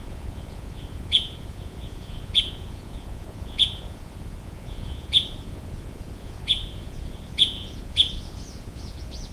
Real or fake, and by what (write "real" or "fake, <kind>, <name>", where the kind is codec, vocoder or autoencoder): fake, vocoder, Vocos